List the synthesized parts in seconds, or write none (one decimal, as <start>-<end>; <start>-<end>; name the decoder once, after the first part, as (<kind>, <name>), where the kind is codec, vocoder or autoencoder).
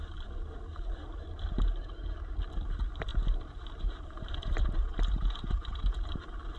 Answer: 3.1-6.0 (vocoder, BigVGAN v2)